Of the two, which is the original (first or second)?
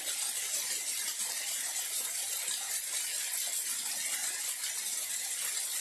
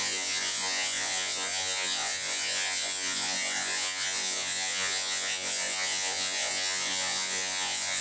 first